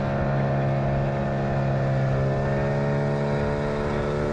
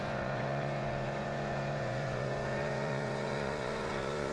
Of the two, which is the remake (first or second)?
second